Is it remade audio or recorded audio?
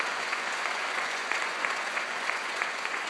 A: remade